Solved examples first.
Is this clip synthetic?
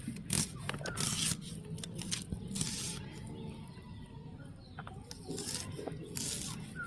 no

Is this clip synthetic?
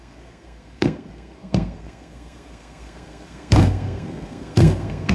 yes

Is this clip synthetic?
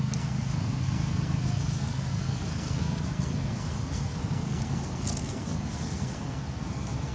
yes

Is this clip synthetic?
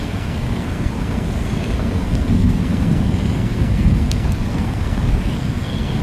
yes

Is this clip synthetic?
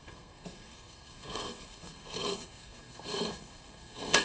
yes